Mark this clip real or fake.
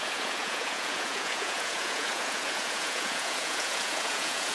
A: fake